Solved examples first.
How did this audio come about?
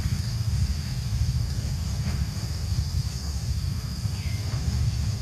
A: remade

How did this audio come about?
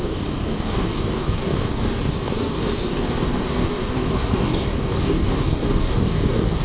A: remade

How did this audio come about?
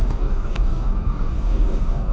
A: remade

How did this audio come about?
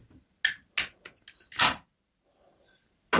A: recorded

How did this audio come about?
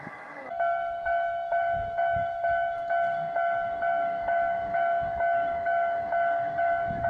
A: remade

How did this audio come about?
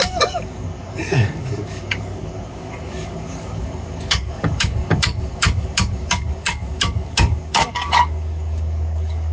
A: remade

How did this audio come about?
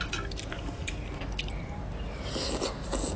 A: recorded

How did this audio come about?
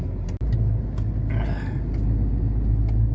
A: recorded